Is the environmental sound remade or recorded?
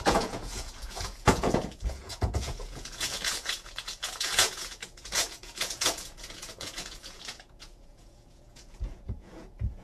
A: remade